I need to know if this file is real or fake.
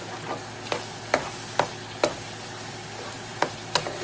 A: real